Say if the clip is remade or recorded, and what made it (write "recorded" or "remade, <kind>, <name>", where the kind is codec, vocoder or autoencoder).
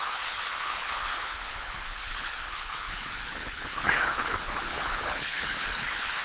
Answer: remade, codec, HILCodec